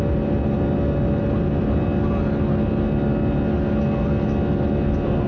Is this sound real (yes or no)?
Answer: yes